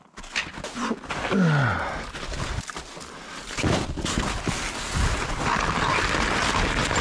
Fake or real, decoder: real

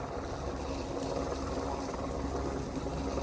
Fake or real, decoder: real